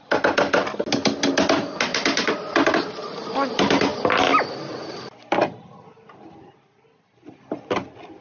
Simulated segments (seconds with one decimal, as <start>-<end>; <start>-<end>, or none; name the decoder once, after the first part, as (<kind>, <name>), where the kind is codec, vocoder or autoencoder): none